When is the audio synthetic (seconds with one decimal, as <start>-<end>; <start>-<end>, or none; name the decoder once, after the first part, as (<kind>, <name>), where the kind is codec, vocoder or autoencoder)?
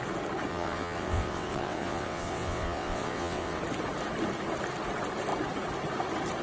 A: 0.5-3.6 (vocoder, WaveNeXt)